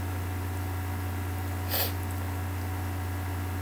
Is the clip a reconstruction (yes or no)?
no